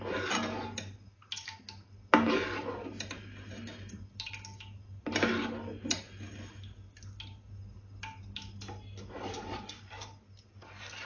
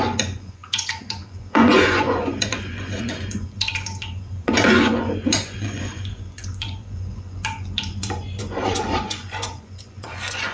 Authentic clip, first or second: first